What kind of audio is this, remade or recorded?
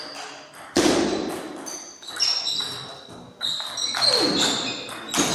recorded